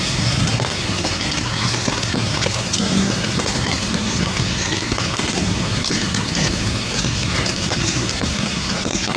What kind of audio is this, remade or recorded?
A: remade